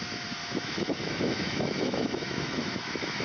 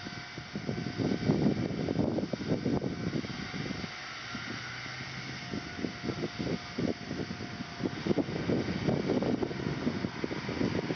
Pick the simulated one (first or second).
first